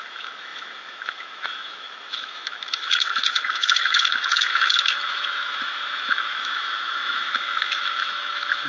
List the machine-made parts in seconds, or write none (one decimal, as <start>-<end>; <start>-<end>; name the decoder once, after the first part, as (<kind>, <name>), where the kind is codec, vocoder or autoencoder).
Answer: 0.0-8.7 (autoencoder, DAC-VAE)